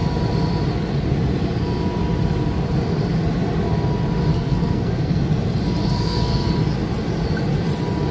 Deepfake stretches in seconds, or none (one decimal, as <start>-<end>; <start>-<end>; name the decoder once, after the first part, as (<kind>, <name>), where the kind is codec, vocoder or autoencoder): 4.3-5.2 (codec, SNAC); 5.8-6.5